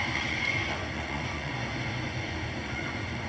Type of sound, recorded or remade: remade